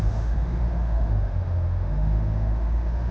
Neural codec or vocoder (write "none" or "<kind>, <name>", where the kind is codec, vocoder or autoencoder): autoencoder, DAC-VAE